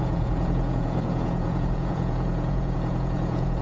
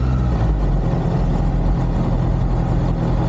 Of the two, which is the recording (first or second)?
second